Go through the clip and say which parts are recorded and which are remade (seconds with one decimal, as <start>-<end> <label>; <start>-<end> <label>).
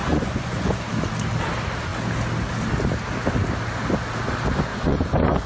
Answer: 0.0-0.8 remade; 0.8-4.7 recorded; 4.7-5.5 remade